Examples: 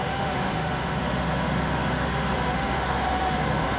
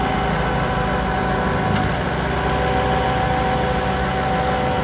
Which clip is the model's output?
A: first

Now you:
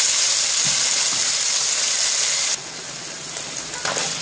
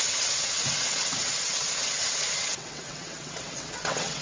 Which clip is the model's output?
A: second